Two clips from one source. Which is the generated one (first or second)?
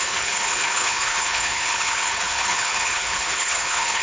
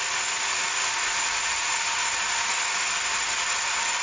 first